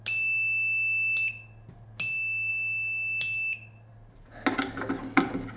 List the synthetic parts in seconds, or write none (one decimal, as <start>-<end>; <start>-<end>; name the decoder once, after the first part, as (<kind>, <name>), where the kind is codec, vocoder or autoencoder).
none